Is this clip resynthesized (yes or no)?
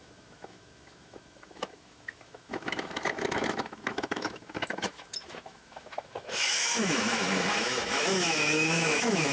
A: yes